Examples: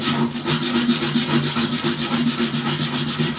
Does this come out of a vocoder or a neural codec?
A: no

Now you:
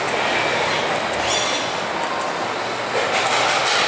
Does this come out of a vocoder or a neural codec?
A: no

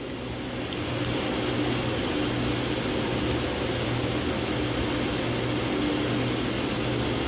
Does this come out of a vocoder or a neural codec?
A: no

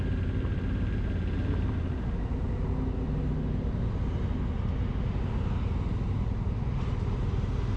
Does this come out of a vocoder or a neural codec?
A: no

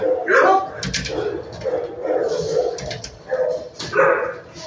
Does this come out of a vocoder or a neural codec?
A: no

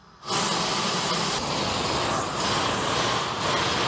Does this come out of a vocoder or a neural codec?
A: no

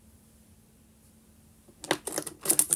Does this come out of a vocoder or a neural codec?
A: no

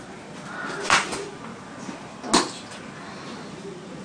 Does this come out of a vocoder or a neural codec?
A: no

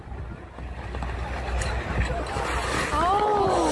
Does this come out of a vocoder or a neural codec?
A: no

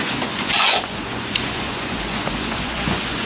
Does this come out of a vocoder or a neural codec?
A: yes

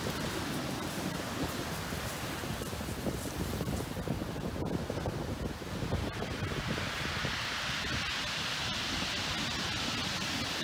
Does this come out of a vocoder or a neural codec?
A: no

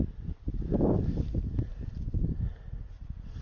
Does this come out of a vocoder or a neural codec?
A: no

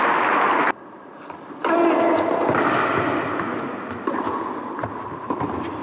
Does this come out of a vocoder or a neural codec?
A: no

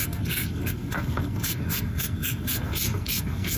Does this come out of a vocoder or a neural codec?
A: yes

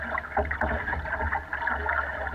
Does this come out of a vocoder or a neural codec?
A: no